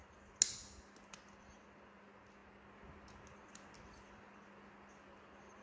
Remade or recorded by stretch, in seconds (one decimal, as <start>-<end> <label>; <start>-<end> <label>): 0.0-5.6 recorded